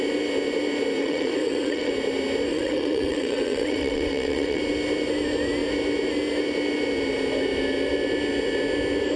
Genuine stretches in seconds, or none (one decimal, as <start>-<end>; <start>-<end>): 0.0-1.0; 1.9-2.5; 4.6-9.2